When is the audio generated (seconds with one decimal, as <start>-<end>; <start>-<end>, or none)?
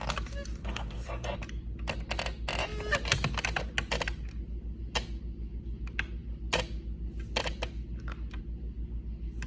0.6-1.4